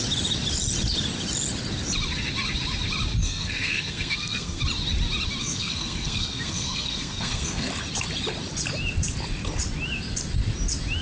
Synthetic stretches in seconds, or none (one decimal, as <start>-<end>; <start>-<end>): 3.2-4.6; 5.4-7.7